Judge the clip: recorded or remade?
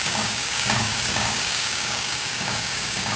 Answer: remade